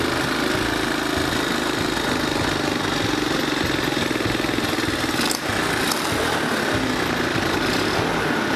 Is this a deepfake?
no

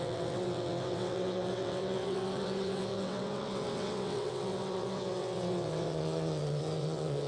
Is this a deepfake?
yes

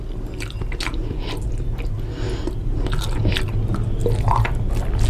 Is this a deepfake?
no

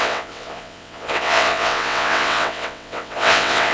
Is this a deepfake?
yes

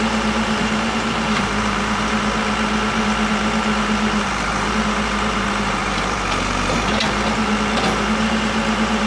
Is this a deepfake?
yes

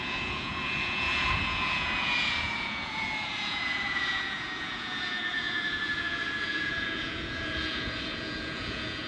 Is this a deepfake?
yes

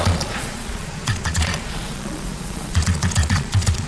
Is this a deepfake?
yes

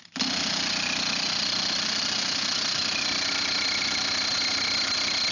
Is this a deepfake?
no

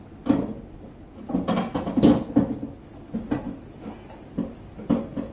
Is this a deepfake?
no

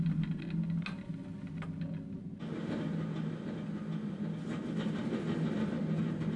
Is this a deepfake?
no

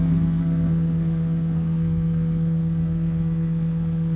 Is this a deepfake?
yes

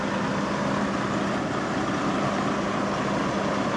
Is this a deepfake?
no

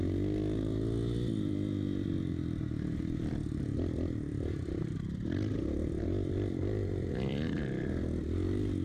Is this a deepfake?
yes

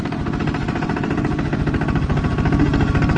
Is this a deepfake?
no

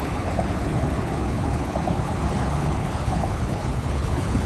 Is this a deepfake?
yes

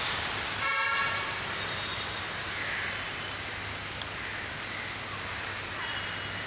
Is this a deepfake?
no